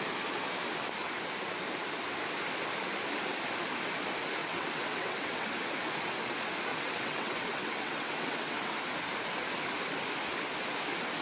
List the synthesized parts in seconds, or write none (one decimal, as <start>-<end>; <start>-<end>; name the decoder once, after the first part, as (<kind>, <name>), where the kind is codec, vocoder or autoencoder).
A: 4.4-5.5 (vocoder, WaveNeXt); 6.7-8.7